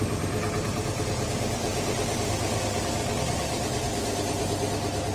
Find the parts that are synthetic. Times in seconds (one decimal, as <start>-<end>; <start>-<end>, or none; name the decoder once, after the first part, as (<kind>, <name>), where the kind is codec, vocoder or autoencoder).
none